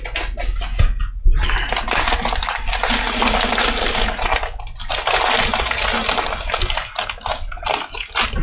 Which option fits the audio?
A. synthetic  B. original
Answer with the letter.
B